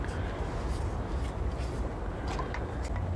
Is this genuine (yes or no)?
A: yes